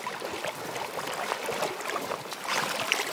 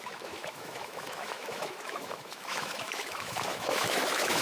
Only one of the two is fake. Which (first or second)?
second